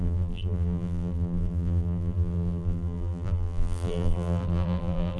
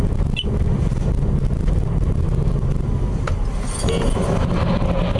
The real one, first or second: second